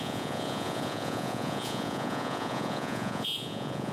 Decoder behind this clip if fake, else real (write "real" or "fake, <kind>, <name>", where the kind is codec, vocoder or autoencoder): fake, vocoder, Vocos